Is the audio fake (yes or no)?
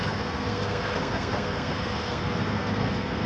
yes